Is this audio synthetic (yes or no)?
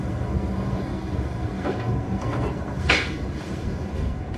yes